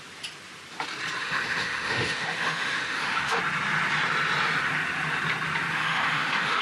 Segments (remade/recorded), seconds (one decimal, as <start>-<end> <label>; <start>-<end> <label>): 0.0-1.2 recorded; 1.2-3.4 remade; 3.4-5.7 recorded; 5.7-6.6 remade